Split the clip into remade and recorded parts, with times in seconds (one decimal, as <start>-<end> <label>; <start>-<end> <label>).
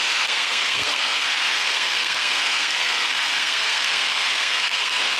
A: 0.0-5.2 remade